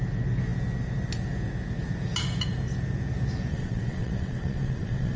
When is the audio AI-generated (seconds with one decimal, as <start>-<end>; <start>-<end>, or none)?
3.5-5.2